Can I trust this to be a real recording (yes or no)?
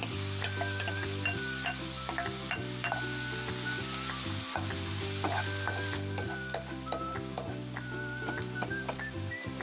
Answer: yes